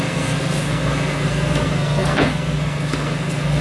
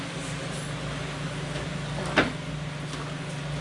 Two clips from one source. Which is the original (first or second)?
second